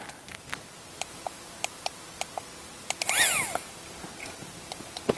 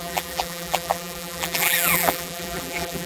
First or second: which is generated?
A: second